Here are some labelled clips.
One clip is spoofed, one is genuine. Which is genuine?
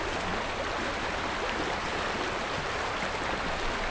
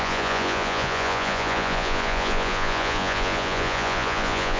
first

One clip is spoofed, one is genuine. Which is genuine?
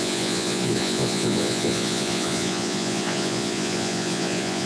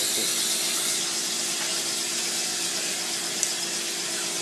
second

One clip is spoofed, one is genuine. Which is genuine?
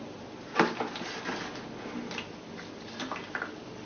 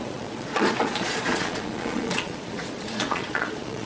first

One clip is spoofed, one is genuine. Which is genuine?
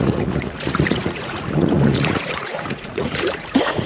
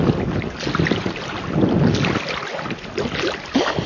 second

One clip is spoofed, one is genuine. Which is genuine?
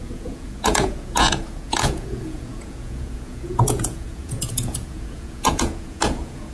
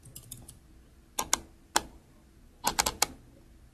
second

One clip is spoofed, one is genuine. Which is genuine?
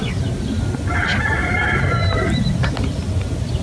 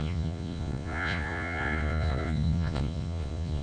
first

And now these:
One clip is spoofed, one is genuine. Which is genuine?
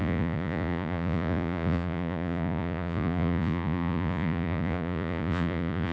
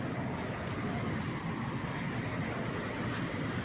second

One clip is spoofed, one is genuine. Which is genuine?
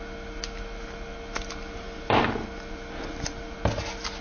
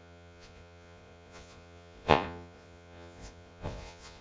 first